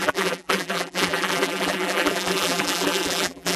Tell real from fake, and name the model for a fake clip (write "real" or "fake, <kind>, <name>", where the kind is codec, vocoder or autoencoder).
fake, vocoder, BigVGAN v2